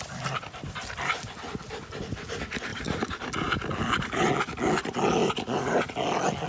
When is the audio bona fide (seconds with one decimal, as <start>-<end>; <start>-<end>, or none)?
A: 0.0-2.7; 4.3-5.2; 5.9-6.5

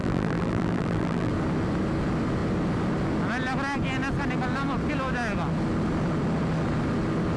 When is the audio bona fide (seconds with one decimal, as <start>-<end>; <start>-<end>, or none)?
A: 1.3-7.4